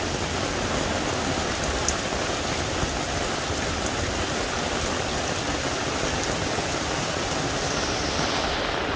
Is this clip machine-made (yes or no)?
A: no